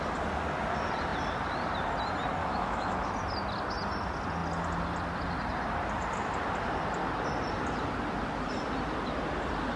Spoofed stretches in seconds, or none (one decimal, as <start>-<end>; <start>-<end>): 2.4-3.1